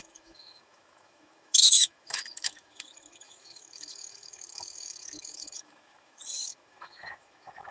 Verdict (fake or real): fake